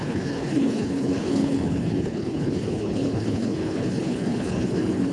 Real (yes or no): no